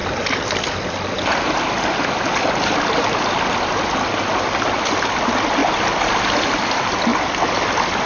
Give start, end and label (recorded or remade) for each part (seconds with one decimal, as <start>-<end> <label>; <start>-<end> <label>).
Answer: 0.0-8.1 recorded